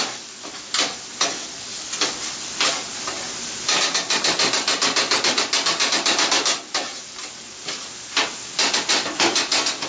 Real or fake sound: real